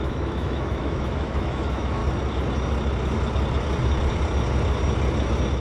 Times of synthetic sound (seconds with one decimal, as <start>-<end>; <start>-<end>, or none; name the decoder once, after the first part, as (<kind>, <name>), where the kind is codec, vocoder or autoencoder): 0.0-2.0 (autoencoder, DAC-VAE)